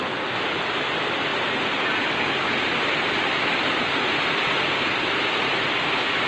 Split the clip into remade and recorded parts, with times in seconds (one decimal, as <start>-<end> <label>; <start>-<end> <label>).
0.0-6.3 recorded